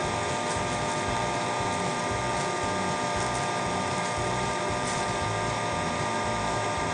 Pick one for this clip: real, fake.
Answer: fake